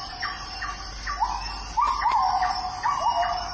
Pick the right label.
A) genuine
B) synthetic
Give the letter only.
A